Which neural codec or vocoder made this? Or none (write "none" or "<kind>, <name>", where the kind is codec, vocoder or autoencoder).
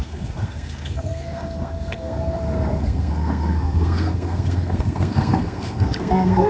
codec, SNAC